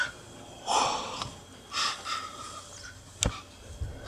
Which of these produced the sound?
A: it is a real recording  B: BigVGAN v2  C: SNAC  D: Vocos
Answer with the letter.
A